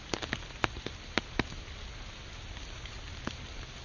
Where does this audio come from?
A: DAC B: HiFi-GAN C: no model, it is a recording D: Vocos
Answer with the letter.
C